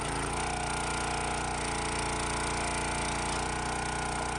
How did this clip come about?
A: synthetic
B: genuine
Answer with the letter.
B